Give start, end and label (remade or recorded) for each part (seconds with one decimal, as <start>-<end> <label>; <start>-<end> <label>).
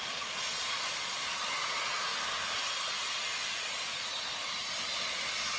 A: 0.0-2.1 remade; 2.1-3.6 recorded; 3.6-4.1 remade; 4.1-4.8 recorded; 4.8-5.6 remade